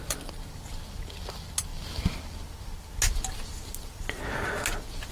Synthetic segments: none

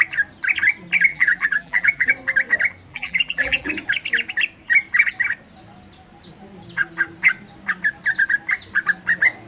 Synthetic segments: 1.1-2.1 (vocoder, BigVGAN v2); 2.9-3.7